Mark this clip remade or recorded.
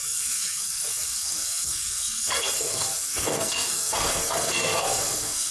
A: remade